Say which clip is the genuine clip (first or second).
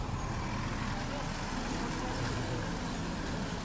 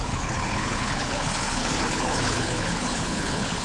first